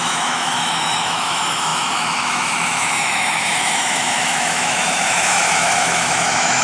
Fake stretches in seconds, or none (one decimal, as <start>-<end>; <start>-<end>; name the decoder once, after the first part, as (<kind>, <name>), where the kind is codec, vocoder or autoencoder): 0.0-6.6 (autoencoder, DAC-VAE)